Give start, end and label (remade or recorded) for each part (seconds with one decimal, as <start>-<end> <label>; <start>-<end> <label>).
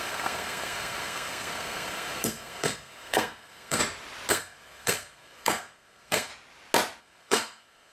0.0-3.8 remade; 3.8-4.3 recorded; 4.3-6.3 remade; 6.3-7.0 recorded; 7.0-7.9 remade